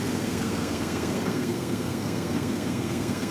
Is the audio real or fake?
fake